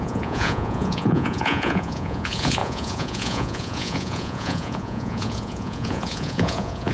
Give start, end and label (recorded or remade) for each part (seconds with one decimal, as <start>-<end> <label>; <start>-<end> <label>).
0.0-6.9 remade